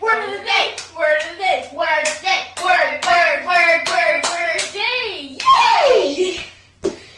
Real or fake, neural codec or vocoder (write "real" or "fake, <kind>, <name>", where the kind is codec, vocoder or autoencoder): fake, autoencoder, DAC-VAE